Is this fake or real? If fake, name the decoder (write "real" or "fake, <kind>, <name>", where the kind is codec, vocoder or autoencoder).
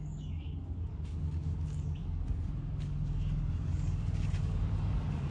fake, codec, DAC